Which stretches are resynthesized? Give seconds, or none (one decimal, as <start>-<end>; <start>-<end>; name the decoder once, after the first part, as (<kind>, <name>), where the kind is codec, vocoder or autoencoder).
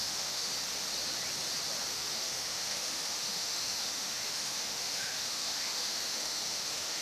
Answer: 0.0-0.5 (autoencoder, DAC-VAE); 1.9-7.0